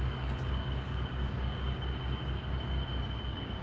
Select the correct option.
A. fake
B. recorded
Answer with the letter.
A